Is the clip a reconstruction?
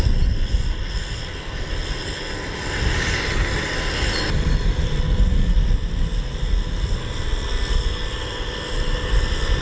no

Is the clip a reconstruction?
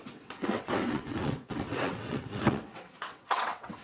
yes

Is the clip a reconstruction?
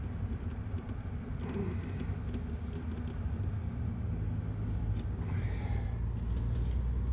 no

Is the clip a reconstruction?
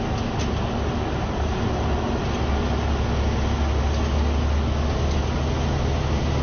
no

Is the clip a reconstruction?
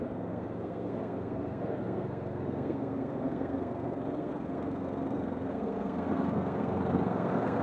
yes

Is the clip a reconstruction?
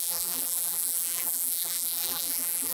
yes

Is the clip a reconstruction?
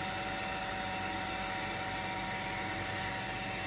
no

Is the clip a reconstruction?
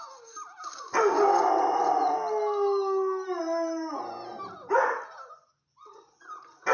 no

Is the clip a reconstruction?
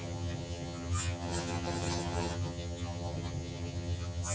yes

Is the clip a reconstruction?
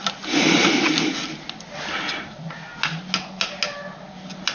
no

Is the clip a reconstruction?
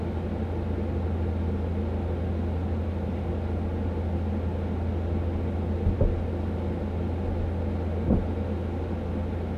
no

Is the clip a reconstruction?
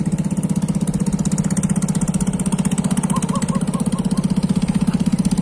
no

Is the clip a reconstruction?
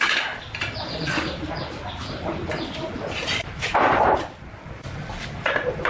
no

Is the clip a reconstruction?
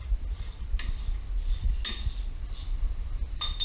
no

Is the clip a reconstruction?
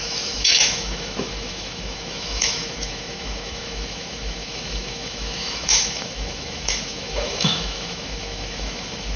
yes